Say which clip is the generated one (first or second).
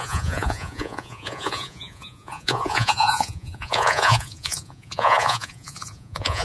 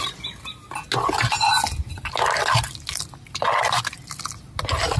first